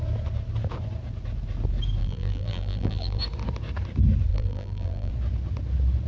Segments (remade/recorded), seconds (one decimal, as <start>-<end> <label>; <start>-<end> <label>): 0.0-2.0 recorded; 2.0-3.2 remade; 3.2-4.3 recorded; 4.3-5.1 remade; 5.1-6.1 recorded

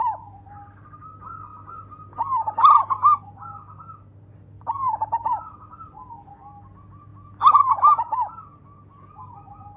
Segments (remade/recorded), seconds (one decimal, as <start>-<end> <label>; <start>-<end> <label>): 0.0-9.8 recorded

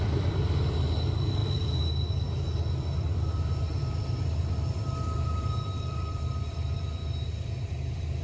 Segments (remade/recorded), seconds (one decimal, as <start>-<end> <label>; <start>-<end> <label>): 0.0-1.4 remade; 1.4-3.8 recorded; 3.8-7.0 remade; 7.0-7.7 recorded; 7.7-8.2 remade

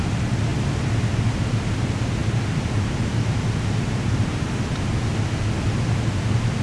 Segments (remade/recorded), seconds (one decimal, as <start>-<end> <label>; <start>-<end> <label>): 0.0-2.2 recorded; 2.2-4.5 remade; 4.5-6.6 recorded

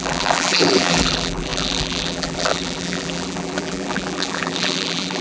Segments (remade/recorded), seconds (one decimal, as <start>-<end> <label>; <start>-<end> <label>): 0.0-5.2 remade

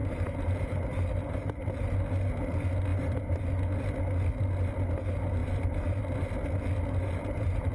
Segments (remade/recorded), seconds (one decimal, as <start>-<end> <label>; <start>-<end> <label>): 0.0-1.6 remade; 1.6-2.9 recorded; 2.9-3.4 remade; 3.4-5.4 recorded; 5.4-6.0 remade; 6.0-7.0 recorded; 7.0-7.7 remade